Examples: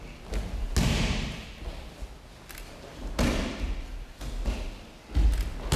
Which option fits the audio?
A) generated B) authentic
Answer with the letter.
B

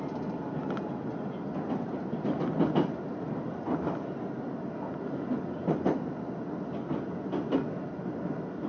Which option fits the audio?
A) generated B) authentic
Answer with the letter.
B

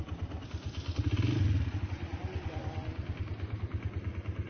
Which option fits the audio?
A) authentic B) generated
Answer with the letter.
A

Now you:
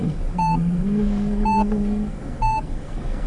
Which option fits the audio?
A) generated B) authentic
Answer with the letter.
A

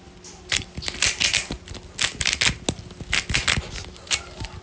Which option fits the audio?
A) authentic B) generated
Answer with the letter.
A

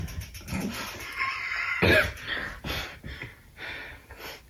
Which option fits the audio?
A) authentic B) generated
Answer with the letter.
A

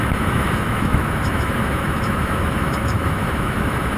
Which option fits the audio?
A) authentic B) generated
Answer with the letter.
B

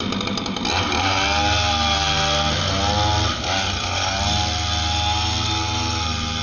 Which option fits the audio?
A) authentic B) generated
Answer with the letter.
A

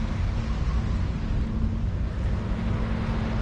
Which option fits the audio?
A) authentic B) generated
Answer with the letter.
A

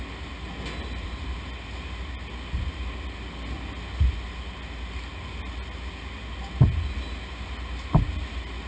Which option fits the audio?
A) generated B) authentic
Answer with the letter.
B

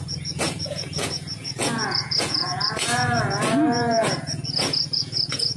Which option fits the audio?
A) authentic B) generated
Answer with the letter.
B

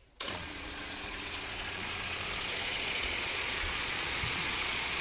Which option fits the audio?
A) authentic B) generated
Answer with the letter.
B